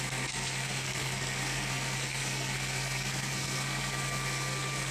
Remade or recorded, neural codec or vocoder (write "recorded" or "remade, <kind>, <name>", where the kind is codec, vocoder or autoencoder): remade, codec, SNAC